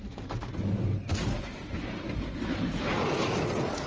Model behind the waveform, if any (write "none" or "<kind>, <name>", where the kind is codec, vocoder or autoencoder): none